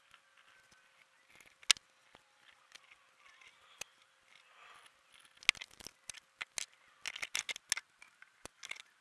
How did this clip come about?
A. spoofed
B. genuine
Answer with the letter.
B